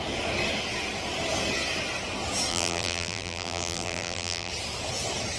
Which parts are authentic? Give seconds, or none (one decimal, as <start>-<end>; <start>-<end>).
0.0-2.5; 4.5-5.4